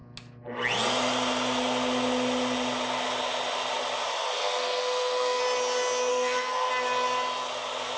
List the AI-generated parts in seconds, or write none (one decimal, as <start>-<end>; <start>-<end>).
4.2-5.4; 6.1-6.7